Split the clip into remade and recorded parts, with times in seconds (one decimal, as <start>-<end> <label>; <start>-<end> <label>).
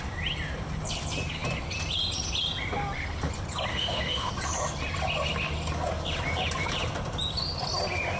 0.0-3.7 recorded; 3.7-4.3 remade; 4.3-8.2 recorded